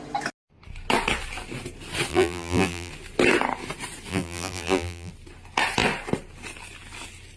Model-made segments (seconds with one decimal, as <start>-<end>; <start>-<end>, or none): 2.1-2.9; 4.1-5.1